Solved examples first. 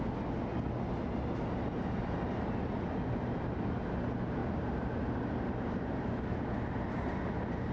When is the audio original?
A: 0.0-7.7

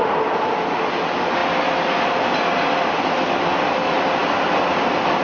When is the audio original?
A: 0.0-5.2

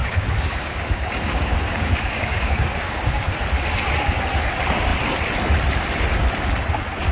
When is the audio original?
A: 3.3-7.1